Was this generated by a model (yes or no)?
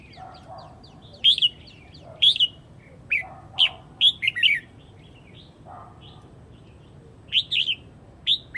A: no